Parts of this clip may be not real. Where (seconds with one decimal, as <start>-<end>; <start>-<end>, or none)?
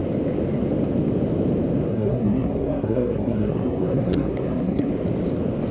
1.9-4.9